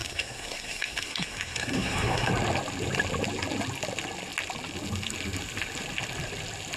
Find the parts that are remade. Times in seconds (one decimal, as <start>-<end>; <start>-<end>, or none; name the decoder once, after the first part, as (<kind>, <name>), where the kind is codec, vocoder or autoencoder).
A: 0.0-2.3 (codec, SNAC)